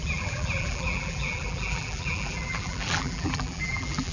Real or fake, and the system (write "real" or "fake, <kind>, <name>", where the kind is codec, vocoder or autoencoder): fake, vocoder, BigVGAN v2